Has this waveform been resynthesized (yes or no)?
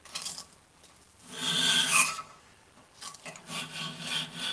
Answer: no